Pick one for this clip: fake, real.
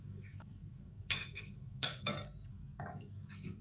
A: fake